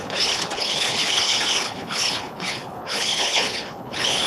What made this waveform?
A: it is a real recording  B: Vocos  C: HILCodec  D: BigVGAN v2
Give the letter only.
C